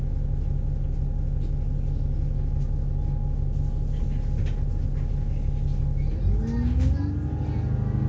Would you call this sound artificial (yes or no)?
no